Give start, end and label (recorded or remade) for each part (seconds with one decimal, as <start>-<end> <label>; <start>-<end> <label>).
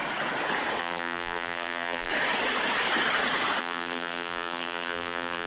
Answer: 0.0-0.8 recorded; 0.8-2.1 remade; 2.1-3.6 recorded; 3.6-5.5 remade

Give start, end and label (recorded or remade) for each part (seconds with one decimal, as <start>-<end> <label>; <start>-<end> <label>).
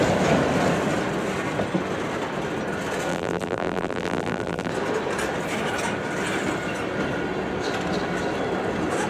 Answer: 0.0-3.1 recorded; 3.1-4.7 remade; 4.7-9.1 recorded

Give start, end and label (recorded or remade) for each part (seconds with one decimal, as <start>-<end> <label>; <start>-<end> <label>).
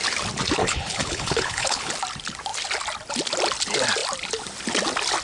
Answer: 0.0-0.6 recorded; 0.6-1.9 remade; 1.9-5.2 recorded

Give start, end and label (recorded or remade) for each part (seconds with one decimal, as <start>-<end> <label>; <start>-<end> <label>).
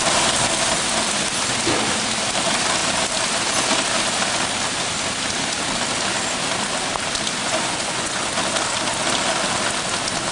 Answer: 0.0-7.4 recorded; 7.4-8.3 remade; 8.3-10.3 recorded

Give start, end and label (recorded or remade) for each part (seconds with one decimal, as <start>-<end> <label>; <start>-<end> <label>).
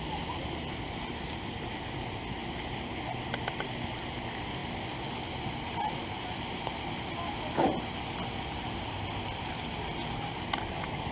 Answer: 0.0-11.1 recorded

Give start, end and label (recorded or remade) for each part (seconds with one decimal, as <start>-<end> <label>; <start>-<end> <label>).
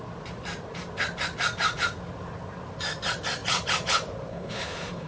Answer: 0.0-4.3 recorded; 4.3-5.1 remade